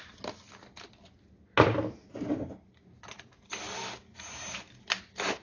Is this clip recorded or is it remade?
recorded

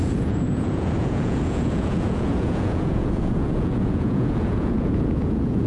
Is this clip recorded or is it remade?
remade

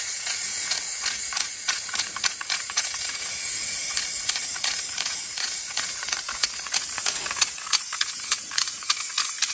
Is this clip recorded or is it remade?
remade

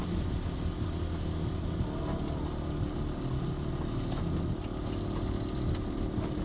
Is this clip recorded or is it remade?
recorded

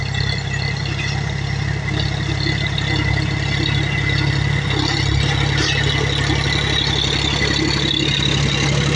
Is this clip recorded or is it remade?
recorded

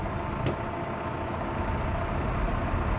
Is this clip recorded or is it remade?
recorded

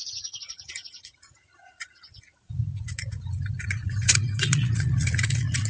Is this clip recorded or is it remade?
remade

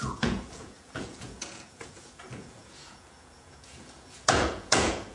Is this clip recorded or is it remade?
remade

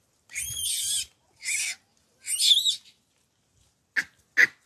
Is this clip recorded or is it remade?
recorded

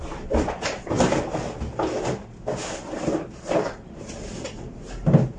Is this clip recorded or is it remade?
recorded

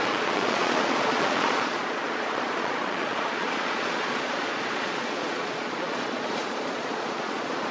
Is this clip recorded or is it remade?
remade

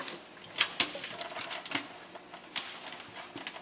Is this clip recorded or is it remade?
recorded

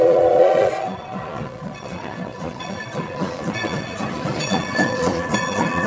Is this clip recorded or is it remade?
remade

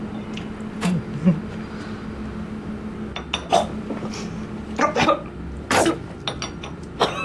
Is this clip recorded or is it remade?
recorded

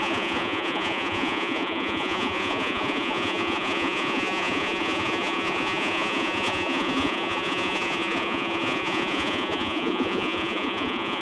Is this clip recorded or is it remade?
remade